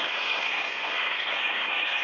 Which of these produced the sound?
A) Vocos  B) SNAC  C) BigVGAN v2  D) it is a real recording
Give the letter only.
B